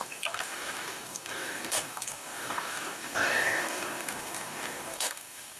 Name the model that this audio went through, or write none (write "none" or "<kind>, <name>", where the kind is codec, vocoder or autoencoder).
codec, DAC